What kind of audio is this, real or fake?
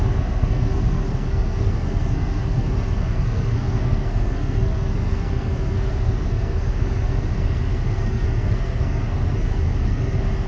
fake